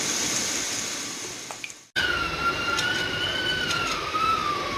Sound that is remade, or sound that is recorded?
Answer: recorded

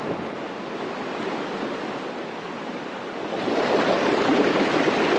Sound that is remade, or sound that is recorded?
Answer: recorded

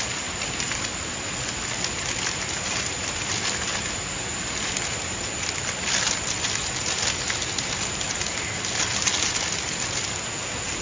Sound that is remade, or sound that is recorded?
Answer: recorded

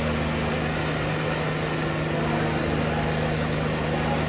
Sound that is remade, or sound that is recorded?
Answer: recorded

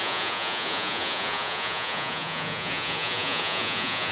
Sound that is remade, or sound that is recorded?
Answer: remade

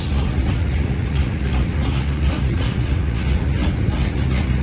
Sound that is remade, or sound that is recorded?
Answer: remade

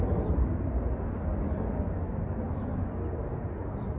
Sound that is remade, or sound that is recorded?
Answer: recorded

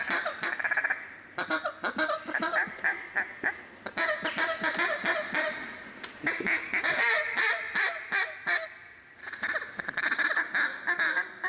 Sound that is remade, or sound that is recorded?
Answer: recorded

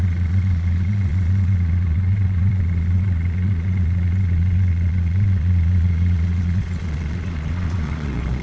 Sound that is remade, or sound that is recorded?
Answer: remade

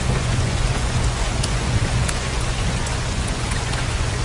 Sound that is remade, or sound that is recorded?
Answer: remade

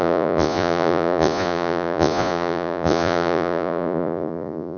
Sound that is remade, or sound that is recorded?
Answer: remade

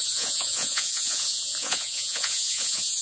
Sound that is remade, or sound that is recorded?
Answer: remade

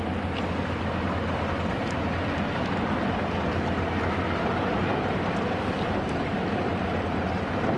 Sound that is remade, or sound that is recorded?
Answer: recorded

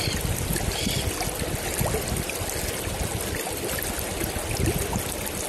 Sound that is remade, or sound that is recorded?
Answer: recorded